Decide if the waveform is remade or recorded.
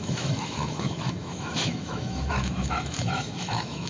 remade